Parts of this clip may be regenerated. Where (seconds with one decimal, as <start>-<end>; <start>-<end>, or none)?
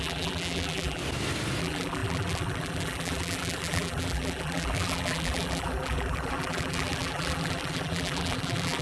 0.0-1.0; 1.6-8.8